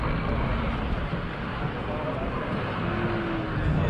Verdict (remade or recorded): recorded